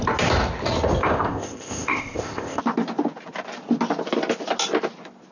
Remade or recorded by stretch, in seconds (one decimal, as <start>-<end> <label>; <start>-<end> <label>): 0.0-1.0 recorded; 1.0-2.6 remade; 2.6-5.3 recorded